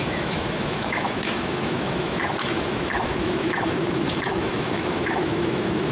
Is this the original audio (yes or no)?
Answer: no